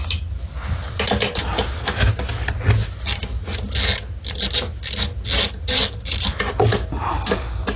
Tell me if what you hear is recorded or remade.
recorded